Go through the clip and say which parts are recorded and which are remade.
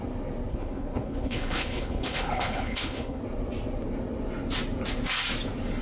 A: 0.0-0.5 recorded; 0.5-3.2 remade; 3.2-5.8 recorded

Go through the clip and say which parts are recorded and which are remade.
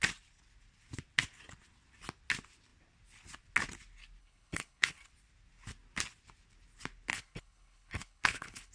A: 0.0-4.2 recorded; 4.2-5.1 remade; 5.1-7.1 recorded; 7.1-8.7 remade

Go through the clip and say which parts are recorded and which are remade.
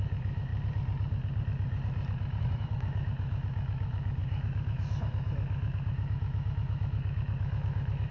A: 0.0-0.5 remade; 0.5-2.4 recorded; 2.4-8.1 remade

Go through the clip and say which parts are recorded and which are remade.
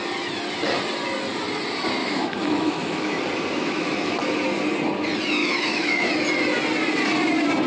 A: 0.0-2.0 recorded; 2.0-3.2 remade; 3.2-3.6 recorded; 3.6-4.1 remade; 4.1-5.4 recorded; 5.4-6.1 remade; 6.1-7.7 recorded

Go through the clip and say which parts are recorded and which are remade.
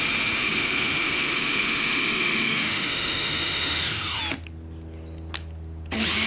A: 0.0-0.4 recorded; 0.4-4.2 remade; 4.2-6.3 recorded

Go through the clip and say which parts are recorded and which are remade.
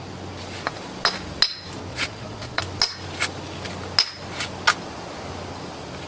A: 0.0-1.9 recorded; 1.9-2.6 remade; 2.6-6.1 recorded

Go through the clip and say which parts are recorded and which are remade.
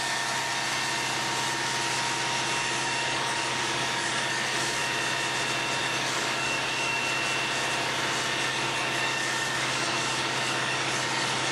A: 0.0-0.5 remade; 0.5-2.6 recorded; 2.6-4.8 remade; 4.8-5.8 recorded; 5.8-7.0 remade; 7.0-8.5 recorded; 8.5-11.5 remade